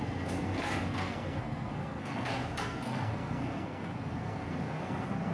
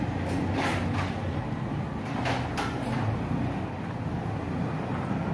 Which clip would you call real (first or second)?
second